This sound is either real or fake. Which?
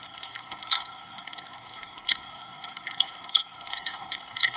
fake